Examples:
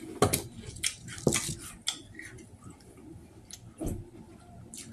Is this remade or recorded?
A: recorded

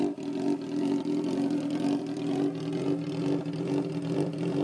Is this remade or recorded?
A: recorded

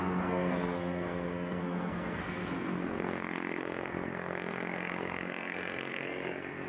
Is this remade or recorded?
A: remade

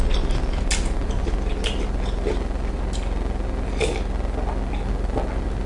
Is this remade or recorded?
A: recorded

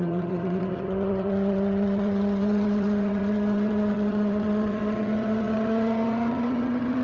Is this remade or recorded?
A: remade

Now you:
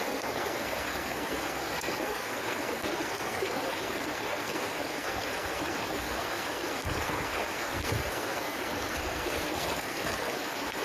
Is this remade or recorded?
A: remade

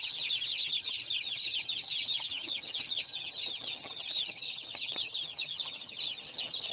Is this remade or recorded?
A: remade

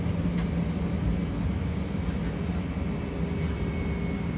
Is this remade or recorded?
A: recorded